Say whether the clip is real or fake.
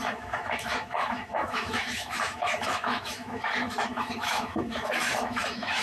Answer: fake